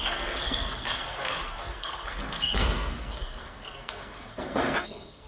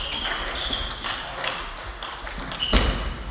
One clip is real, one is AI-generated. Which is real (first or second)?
second